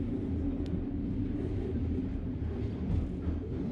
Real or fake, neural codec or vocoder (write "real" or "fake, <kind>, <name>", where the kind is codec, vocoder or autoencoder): real